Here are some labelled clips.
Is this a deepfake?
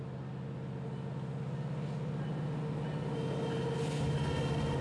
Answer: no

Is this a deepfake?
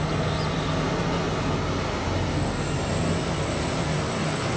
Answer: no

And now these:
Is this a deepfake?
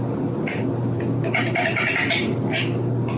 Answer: no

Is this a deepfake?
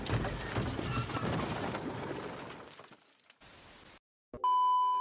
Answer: no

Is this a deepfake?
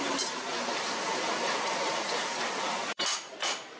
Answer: yes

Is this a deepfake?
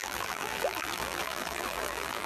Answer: yes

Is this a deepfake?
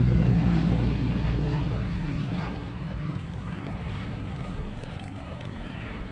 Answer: yes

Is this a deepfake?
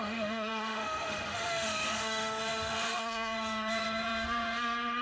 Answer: yes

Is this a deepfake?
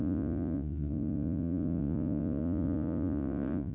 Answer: yes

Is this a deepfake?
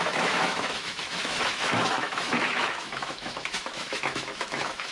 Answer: yes